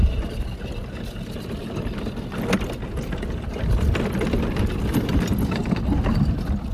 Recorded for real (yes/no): yes